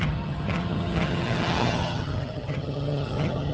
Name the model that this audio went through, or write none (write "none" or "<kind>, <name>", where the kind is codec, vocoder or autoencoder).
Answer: vocoder, HiFi-GAN